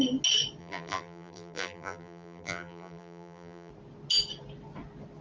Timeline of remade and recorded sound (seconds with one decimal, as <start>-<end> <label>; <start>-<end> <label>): 0.0-0.6 recorded; 0.6-3.7 remade; 3.7-5.2 recorded